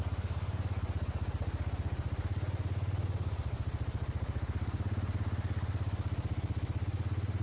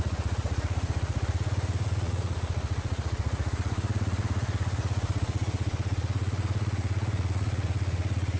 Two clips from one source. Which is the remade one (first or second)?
second